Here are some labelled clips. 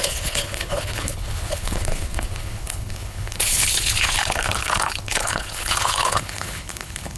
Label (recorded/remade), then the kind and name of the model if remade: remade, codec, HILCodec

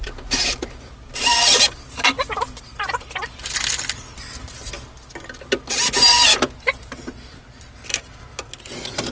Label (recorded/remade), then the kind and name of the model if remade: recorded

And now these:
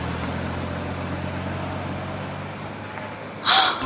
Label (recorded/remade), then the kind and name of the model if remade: recorded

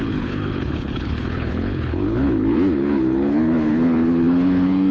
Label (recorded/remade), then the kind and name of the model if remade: remade, codec, HILCodec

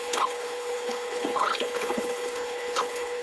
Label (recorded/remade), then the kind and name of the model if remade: remade, codec, HILCodec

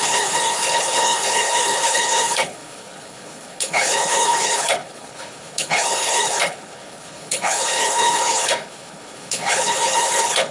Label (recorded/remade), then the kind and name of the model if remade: remade, codec, HILCodec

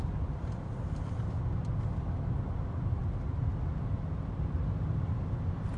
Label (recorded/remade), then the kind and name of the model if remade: recorded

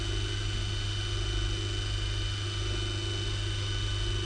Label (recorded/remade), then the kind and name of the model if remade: recorded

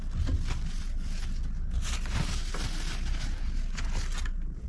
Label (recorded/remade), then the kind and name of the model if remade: recorded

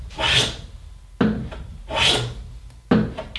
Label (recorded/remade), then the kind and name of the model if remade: recorded